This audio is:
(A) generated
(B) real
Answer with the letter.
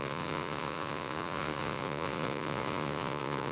A